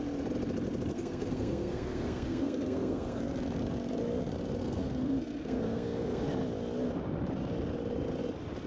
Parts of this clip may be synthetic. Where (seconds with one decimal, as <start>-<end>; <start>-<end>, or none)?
0.9-3.2; 4.6-6.2